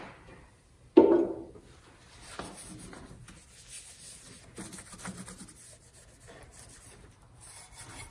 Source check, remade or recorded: recorded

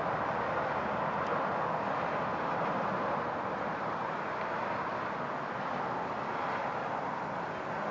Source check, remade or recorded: recorded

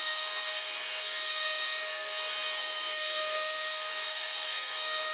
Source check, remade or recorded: remade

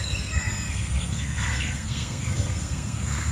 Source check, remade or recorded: remade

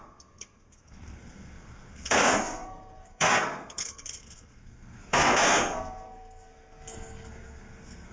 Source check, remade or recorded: remade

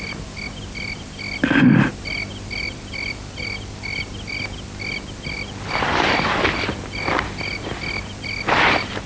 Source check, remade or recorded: recorded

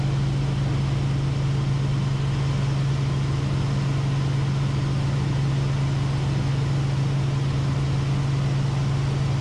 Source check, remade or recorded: recorded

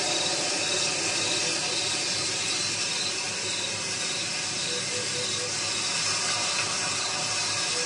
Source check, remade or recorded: recorded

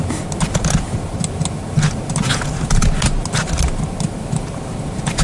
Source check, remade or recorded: recorded